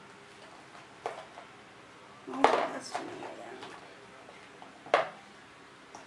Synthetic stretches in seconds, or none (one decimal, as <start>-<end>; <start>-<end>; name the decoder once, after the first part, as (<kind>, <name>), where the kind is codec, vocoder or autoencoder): none